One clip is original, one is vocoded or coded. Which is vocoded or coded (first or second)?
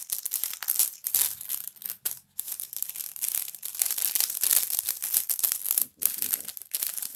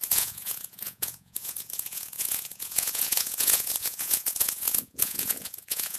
second